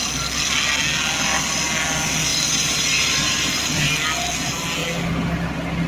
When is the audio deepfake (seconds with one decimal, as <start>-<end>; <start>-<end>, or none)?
2.3-3.8